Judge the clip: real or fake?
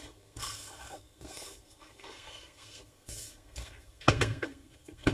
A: fake